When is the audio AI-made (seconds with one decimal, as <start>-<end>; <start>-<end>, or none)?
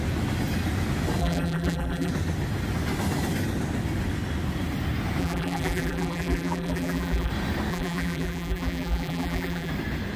1.2-2.1; 5.2-7.3; 7.7-9.7